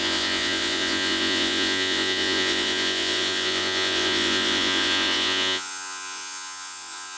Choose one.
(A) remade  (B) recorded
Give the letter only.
A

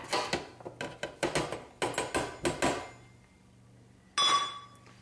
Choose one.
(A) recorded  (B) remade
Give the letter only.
A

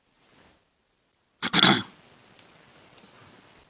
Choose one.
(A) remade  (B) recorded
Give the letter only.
B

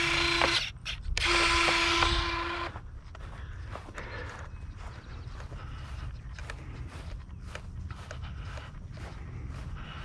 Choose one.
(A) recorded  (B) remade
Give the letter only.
A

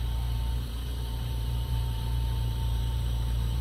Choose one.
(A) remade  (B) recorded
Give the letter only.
A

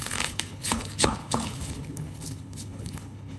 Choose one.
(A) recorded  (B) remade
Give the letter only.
B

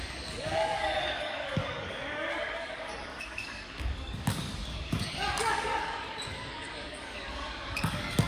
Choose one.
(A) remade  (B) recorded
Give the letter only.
A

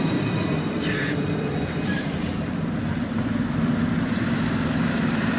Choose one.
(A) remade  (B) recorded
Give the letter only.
A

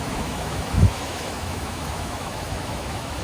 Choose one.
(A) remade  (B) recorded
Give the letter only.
A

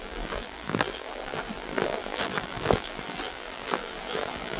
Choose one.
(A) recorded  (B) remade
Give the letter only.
B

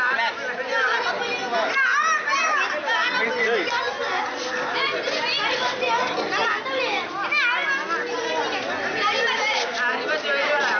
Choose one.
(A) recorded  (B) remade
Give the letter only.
A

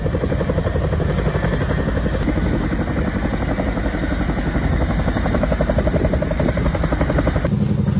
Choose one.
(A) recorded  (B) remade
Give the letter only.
A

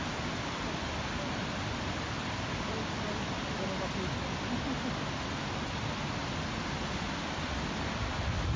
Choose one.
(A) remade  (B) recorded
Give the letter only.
B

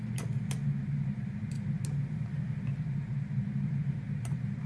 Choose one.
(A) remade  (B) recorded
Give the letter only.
A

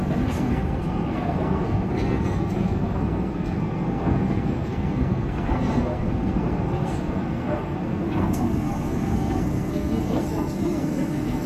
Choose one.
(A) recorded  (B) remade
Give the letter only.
B